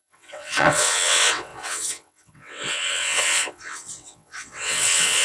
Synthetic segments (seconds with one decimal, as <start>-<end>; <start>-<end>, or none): 0.0-5.2